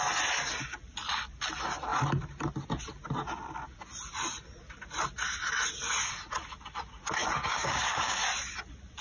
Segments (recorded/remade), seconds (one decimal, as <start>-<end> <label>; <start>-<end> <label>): 0.0-7.5 recorded; 7.5-8.2 remade; 8.2-9.0 recorded